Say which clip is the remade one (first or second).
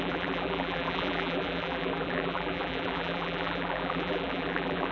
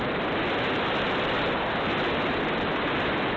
first